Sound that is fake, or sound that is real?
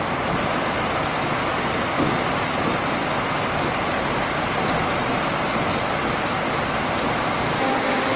real